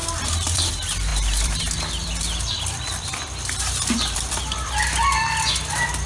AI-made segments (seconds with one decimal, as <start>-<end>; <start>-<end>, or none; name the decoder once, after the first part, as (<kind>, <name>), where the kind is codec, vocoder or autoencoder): 0.0-0.7 (vocoder, BigVGAN v2); 1.1-4.8

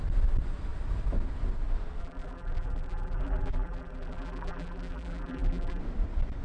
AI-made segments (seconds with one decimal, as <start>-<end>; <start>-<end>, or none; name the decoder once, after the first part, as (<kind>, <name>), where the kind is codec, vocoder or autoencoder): 2.0-5.8 (vocoder, BigVGAN v2)

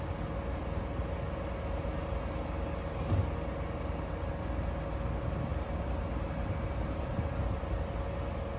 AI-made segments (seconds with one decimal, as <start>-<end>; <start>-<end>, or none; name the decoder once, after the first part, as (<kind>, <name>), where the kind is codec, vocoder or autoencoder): 5.5-7.6 (vocoder, BigVGAN v2)